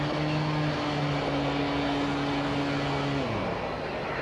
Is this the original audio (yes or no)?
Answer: yes